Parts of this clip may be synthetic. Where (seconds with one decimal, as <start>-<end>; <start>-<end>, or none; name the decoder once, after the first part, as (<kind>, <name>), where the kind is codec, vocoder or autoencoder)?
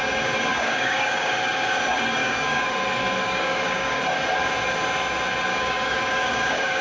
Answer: 0.5-1.3 (codec, DAC); 2.2-2.7; 3.2-4.0; 5.5-6.8